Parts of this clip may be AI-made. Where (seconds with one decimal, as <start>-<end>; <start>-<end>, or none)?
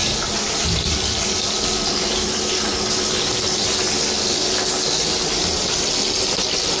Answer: none